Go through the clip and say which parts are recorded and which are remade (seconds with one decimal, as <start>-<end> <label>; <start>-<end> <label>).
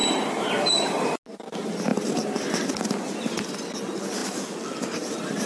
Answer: 0.0-1.1 remade; 1.1-1.9 recorded; 1.9-2.7 remade; 2.7-4.2 recorded; 4.2-5.5 remade